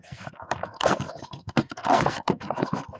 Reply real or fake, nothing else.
fake